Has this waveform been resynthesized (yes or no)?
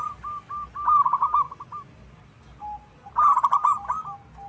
no